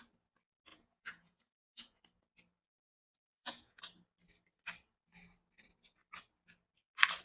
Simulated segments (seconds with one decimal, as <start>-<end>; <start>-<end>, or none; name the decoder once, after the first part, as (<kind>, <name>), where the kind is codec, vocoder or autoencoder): 0.7-2.0 (vocoder, Vocos); 3.0-3.8

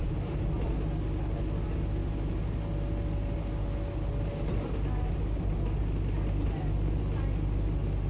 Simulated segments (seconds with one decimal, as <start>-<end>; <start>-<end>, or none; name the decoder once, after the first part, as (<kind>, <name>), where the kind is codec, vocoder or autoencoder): none

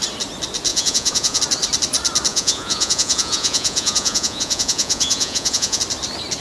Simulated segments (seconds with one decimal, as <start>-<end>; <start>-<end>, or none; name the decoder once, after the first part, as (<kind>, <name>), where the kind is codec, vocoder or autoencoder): 0.7-1.4 (vocoder, Vocos); 2.3-5.8